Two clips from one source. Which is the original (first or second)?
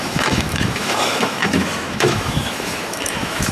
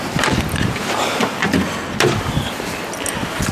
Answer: second